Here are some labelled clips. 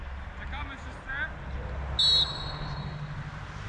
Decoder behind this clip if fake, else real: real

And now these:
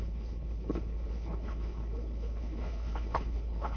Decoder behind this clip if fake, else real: fake, codec, HILCodec